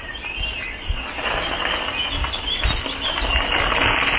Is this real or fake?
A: real